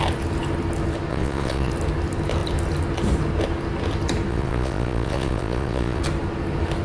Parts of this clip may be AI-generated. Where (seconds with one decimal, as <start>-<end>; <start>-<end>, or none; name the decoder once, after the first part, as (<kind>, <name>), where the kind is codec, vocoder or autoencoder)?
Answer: 1.1-1.7 (vocoder, Vocos); 4.3-6.0